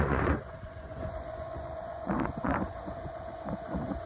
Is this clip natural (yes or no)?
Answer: no